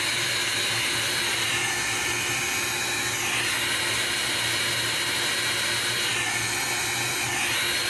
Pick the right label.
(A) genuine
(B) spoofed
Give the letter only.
A